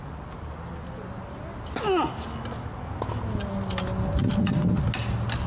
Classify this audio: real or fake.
real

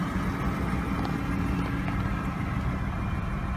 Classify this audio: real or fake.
real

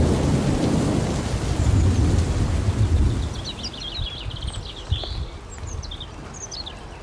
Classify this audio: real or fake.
real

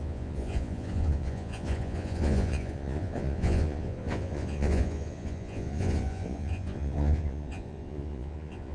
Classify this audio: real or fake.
fake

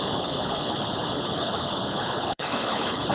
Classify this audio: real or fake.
fake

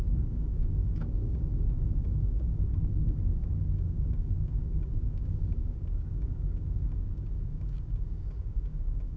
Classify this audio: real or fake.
fake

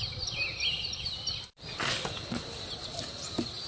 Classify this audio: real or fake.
fake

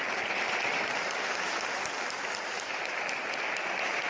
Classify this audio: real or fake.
real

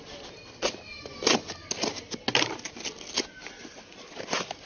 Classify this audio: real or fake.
real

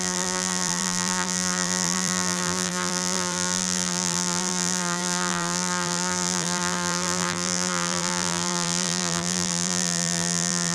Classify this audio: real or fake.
fake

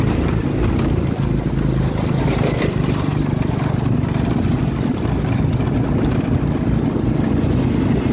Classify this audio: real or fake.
real